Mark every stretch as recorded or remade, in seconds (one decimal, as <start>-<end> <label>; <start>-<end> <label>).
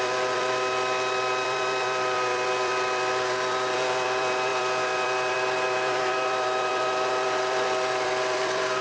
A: 0.0-8.8 remade